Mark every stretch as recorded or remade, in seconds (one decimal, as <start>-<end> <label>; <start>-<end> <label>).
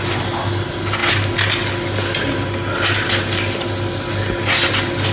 0.0-5.1 recorded